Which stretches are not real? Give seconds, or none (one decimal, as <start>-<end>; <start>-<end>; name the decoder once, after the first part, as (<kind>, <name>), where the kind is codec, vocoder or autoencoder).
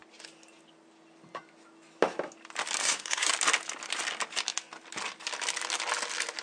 2.8-3.3 (codec, SNAC)